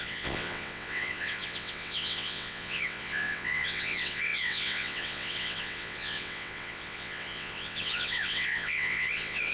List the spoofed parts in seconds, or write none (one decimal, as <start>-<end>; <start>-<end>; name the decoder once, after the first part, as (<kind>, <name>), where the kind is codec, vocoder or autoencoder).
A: 0.0-9.5 (vocoder, WaveNeXt)